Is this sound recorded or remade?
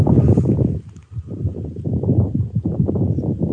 recorded